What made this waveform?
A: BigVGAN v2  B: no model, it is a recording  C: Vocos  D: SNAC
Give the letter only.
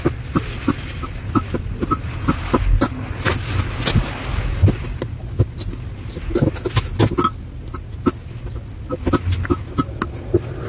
B